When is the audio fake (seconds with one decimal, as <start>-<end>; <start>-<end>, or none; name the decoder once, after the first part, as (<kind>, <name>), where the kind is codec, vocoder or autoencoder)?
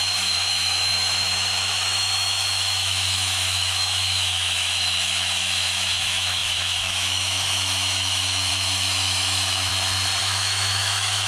0.0-9.7 (autoencoder, DAC-VAE); 10.2-11.3